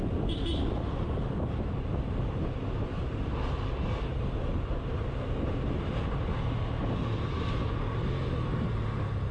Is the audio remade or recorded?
recorded